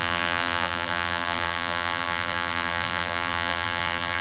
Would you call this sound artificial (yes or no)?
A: yes